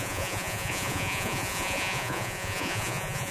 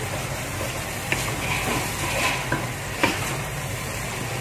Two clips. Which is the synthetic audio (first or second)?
first